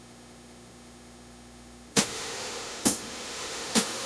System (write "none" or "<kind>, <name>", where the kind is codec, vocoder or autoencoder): autoencoder, DAC-VAE